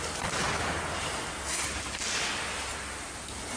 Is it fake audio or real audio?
real